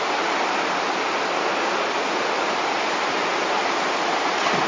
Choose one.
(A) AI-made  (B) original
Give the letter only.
B